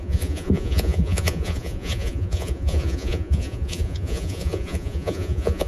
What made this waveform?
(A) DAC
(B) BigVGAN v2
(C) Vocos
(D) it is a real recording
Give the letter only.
C